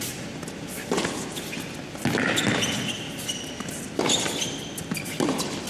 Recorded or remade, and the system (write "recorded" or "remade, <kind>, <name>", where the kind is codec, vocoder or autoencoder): recorded